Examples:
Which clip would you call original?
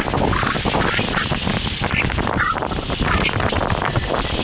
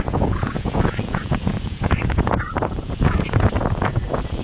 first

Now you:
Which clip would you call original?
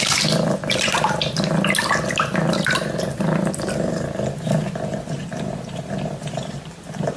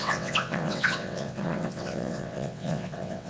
first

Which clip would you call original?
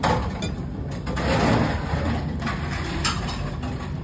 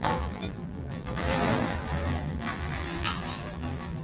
first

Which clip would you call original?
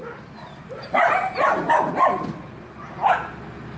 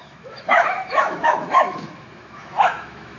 first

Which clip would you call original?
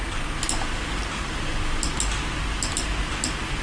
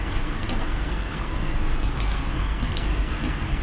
first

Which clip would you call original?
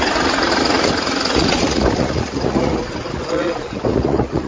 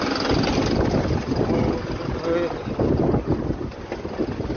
second